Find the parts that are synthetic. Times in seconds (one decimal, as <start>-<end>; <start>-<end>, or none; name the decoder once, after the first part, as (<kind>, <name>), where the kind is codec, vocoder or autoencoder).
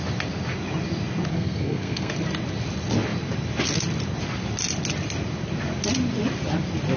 1.3-2.1 (codec, SNAC)